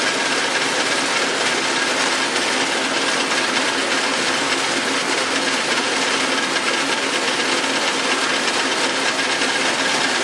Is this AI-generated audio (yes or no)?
no